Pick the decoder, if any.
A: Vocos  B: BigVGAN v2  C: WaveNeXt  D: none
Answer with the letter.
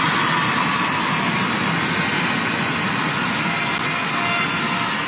D